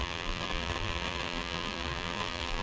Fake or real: fake